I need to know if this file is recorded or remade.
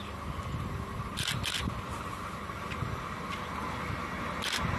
recorded